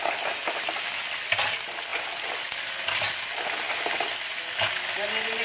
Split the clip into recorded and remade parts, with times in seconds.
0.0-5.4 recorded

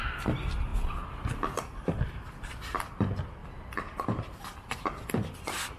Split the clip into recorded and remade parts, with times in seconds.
0.0-3.4 remade; 3.4-4.0 recorded; 4.0-5.8 remade